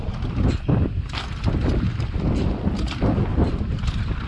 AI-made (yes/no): no